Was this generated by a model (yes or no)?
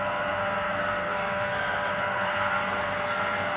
yes